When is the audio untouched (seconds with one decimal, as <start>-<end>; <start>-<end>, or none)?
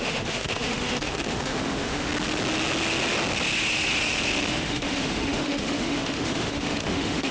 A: 2.1-4.5